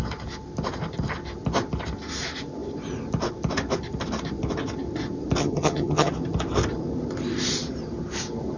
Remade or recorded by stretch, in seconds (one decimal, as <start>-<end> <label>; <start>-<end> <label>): 0.0-5.4 recorded; 5.4-6.1 remade; 6.1-8.6 recorded